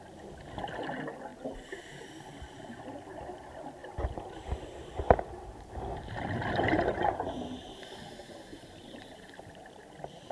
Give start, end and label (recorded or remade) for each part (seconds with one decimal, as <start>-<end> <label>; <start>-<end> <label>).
0.0-1.3 recorded; 1.3-1.8 remade; 1.8-8.5 recorded; 8.5-10.3 remade